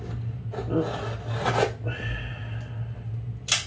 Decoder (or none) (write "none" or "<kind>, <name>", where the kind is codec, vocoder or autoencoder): none